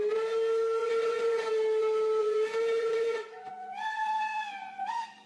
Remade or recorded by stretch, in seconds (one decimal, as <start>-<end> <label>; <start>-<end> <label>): 0.0-0.8 recorded; 0.8-1.5 remade; 1.5-2.2 recorded; 2.2-5.3 remade